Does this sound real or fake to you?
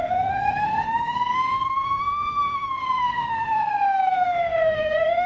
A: fake